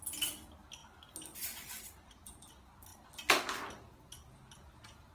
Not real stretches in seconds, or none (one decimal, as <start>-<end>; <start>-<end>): none